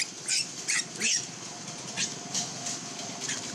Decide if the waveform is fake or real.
real